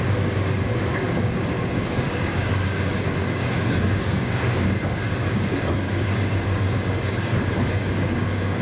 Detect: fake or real fake